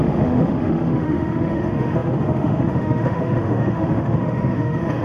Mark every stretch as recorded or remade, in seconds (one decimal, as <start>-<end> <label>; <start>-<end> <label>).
0.0-5.0 remade